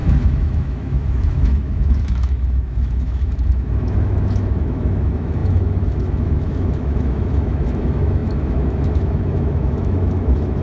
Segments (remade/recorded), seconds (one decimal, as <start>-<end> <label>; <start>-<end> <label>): 0.0-10.6 remade